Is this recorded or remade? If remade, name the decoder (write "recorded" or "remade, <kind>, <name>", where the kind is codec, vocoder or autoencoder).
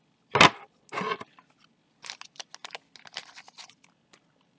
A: recorded